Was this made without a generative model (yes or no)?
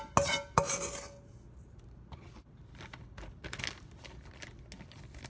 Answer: yes